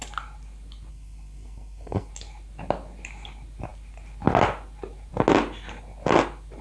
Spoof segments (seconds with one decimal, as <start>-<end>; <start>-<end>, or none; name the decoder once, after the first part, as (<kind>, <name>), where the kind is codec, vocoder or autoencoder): 0.9-2.1 (codec, SNAC)